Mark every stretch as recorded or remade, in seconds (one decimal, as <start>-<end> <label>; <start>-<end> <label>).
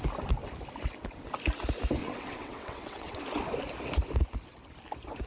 0.0-2.0 recorded; 2.0-3.2 remade; 3.2-5.3 recorded